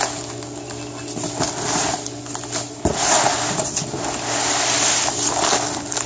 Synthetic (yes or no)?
no